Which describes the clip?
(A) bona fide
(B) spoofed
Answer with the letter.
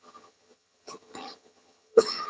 B